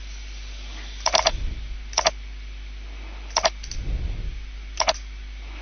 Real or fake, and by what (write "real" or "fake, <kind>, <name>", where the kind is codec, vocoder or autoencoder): real